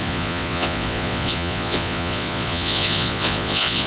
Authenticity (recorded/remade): remade